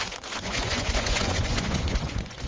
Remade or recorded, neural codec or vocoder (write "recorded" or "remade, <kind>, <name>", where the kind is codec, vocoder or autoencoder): remade, vocoder, Vocos